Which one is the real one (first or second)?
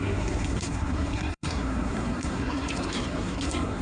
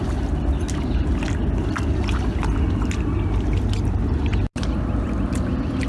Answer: second